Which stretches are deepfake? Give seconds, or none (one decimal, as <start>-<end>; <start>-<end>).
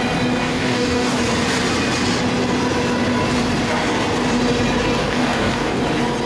0.4-1.2; 5.0-5.8